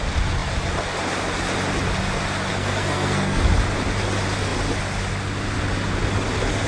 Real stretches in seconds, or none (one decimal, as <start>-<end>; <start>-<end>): 0.0-2.5; 3.4-6.7